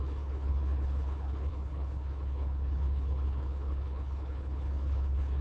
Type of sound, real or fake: fake